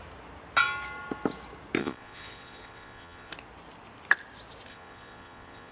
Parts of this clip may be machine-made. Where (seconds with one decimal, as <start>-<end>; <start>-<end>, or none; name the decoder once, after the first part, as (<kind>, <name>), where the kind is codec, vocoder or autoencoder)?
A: 1.8-3.3 (vocoder, Vocos); 4.7-5.7